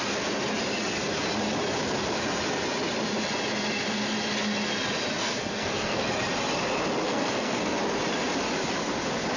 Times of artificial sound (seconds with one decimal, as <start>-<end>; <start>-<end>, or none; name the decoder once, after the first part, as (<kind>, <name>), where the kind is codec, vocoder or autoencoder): 5.2-6.0 (codec, SNAC); 7.1-7.8